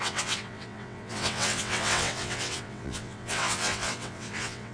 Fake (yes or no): yes